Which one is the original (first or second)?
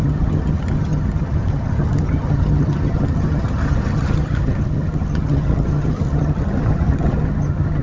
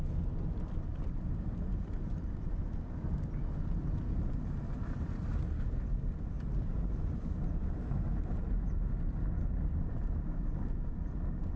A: second